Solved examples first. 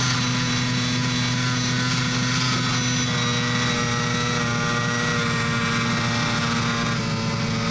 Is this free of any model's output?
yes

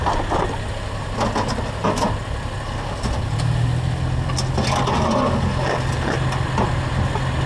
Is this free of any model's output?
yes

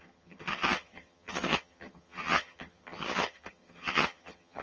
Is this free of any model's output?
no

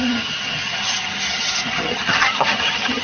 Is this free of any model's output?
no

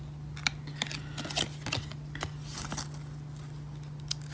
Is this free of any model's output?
yes